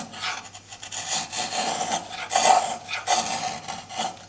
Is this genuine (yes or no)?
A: yes